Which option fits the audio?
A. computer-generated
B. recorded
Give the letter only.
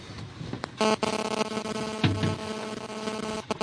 B